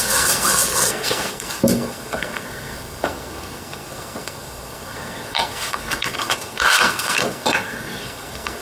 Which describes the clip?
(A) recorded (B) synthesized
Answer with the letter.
B